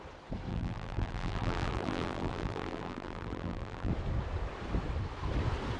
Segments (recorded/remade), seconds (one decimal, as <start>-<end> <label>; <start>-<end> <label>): 0.0-0.5 recorded; 0.5-3.9 remade; 3.9-5.8 recorded